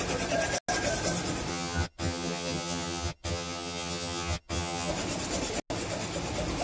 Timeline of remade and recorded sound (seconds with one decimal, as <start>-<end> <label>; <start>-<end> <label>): 0.0-1.5 recorded; 1.5-4.9 remade; 4.9-6.6 recorded